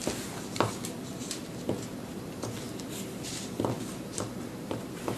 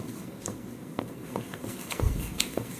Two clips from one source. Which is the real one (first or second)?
first